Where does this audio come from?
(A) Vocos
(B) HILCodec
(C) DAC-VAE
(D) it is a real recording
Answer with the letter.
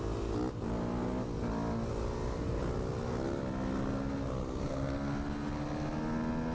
D